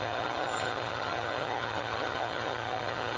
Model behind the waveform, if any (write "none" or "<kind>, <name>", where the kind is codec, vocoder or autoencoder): vocoder, HiFi-GAN